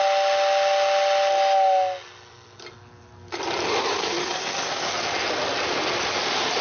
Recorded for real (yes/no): yes